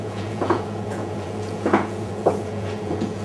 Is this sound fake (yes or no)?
yes